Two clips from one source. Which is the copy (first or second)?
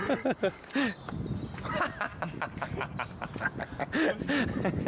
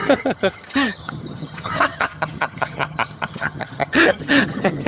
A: second